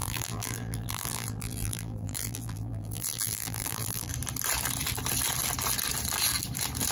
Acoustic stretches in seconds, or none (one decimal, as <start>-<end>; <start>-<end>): 4.1-6.9